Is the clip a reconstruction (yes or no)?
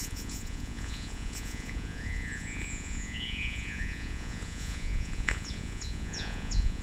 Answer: yes